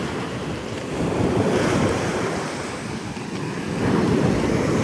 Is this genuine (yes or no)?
yes